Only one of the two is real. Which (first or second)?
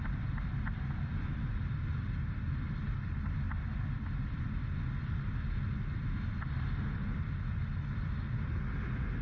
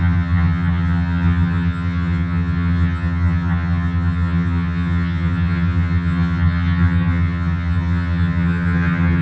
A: first